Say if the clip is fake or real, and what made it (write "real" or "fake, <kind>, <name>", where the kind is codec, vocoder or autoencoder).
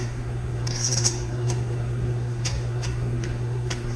fake, codec, SNAC